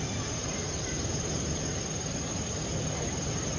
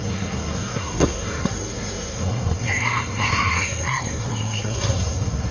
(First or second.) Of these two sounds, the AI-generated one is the second